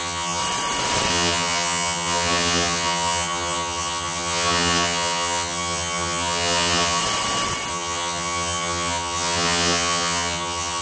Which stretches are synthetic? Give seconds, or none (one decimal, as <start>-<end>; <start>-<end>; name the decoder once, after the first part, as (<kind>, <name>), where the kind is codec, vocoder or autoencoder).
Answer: 0.0-0.4 (vocoder, HiFi-GAN); 1.1-7.0; 7.7-10.8